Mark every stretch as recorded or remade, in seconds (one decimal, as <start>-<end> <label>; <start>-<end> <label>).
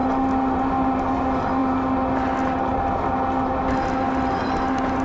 0.0-5.0 recorded